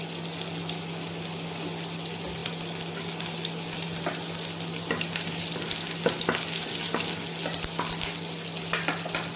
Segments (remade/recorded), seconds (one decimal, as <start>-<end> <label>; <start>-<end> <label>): 0.0-9.4 recorded